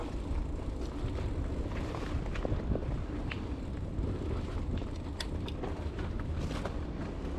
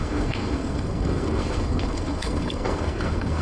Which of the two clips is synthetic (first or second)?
second